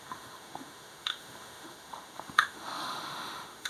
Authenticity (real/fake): fake